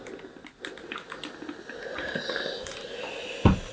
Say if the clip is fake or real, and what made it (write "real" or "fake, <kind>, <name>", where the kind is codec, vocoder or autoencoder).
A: real